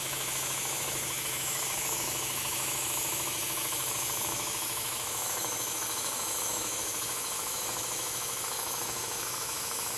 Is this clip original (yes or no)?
no